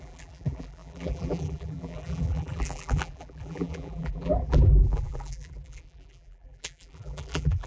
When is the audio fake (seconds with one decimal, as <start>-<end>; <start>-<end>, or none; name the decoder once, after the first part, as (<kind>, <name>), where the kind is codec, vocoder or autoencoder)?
0.0-7.7 (vocoder, BigVGAN v2)